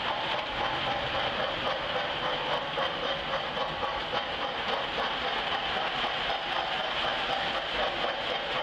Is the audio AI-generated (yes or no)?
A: no